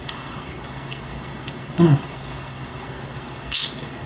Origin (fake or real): fake